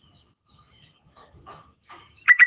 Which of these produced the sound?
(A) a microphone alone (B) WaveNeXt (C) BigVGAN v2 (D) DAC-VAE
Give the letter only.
D